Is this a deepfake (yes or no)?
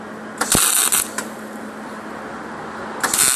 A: no